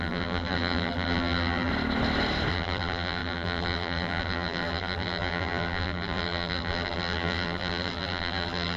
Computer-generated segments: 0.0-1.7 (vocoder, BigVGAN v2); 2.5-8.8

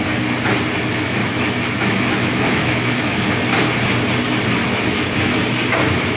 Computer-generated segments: 1.2-3.5 (autoencoder, DAC-VAE); 4.6-5.4